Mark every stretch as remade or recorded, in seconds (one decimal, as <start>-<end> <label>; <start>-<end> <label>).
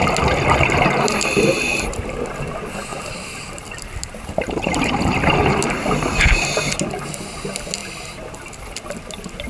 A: 0.0-2.9 recorded; 2.9-7.0 remade; 7.0-9.5 recorded